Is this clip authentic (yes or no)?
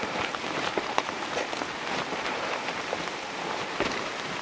yes